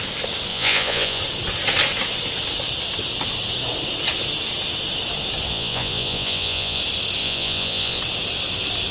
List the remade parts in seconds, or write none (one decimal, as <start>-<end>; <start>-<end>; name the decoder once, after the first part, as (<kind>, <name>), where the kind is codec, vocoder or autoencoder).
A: 0.5-1.2 (vocoder, Vocos); 5.5-6.8; 7.2-8.0